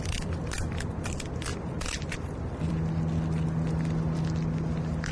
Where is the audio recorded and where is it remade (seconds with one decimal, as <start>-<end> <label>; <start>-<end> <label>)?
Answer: 0.0-5.1 recorded